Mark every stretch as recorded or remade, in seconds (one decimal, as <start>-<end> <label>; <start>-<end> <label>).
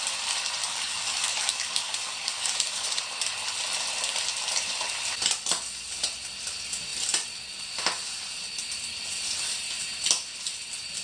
0.0-0.6 recorded; 0.6-3.0 remade; 3.0-11.0 recorded